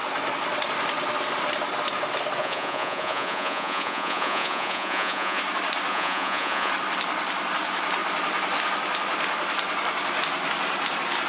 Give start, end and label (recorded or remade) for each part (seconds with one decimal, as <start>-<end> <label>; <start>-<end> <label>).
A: 0.0-2.4 recorded; 2.4-5.4 remade; 5.4-5.9 recorded; 5.9-6.7 remade; 6.7-11.3 recorded